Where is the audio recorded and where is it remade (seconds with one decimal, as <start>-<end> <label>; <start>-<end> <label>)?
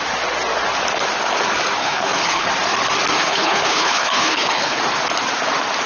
0.0-1.8 recorded; 1.8-2.5 remade; 2.5-3.3 recorded; 3.3-4.8 remade; 4.8-5.9 recorded